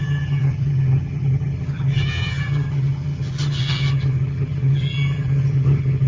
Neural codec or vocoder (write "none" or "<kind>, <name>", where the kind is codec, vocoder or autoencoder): vocoder, HiFi-GAN